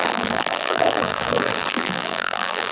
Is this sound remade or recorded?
remade